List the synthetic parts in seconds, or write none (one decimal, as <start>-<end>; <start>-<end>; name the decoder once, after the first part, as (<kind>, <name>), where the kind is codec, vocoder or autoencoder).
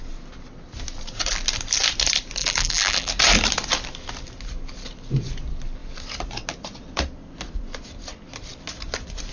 2.4-3.1 (vocoder, BigVGAN v2)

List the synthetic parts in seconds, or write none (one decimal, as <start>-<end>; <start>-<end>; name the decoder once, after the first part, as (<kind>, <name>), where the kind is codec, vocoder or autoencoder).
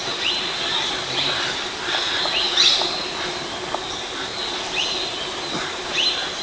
none